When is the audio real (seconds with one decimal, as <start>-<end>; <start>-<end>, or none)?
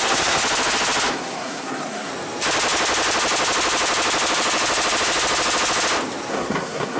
0.4-1.1; 2.1-6.3